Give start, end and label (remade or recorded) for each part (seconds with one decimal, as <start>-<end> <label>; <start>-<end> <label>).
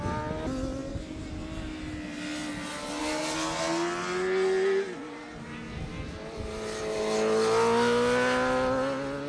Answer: 0.0-5.3 recorded; 5.3-5.9 remade; 5.9-9.3 recorded